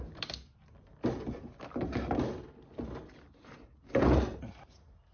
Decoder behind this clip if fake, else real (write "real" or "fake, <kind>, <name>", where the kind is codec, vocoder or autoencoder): real